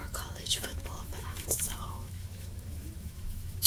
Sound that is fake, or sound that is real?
fake